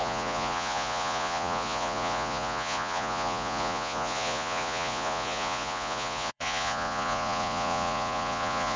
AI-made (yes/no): yes